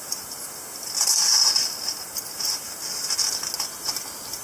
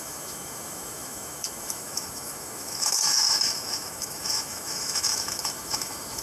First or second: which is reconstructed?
second